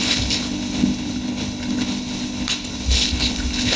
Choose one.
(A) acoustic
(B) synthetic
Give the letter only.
B